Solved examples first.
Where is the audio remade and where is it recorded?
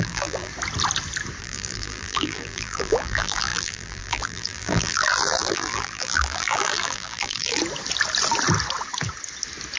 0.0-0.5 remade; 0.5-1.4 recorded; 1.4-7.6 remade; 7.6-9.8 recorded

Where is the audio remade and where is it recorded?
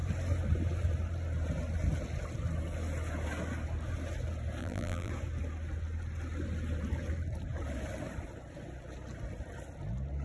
0.0-4.6 recorded; 4.6-5.1 remade; 5.1-10.2 recorded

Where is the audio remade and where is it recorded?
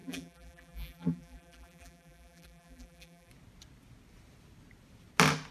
0.0-3.3 remade; 3.3-5.5 recorded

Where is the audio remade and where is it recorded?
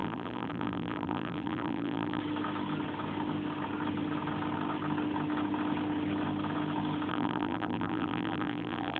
0.0-2.2 remade; 2.2-7.1 recorded; 7.1-9.0 remade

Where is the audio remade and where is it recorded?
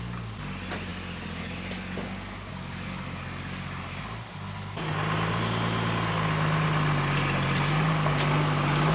0.0-8.9 recorded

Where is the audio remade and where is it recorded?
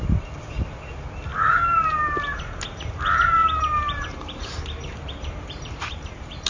0.0-3.4 recorded; 3.4-6.5 remade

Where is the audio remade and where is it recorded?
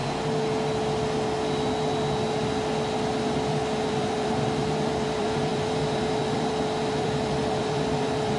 0.0-3.9 recorded; 3.9-8.4 remade